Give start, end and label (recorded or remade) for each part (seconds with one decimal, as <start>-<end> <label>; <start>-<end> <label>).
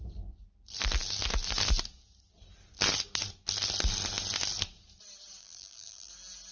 0.0-5.4 recorded; 5.4-6.1 remade; 6.1-6.5 recorded